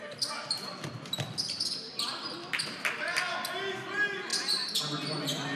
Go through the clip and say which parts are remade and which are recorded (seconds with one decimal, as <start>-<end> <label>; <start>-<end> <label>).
0.0-5.5 recorded

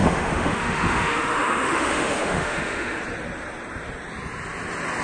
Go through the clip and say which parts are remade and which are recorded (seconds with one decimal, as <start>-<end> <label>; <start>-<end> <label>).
0.0-3.0 remade; 3.0-5.0 recorded